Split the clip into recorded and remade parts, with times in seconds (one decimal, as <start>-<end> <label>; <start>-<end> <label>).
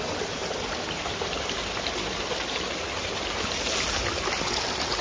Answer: 0.0-5.0 recorded